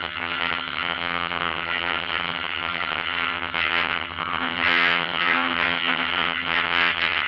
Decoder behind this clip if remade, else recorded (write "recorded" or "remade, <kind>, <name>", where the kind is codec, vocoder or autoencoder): remade, vocoder, HiFi-GAN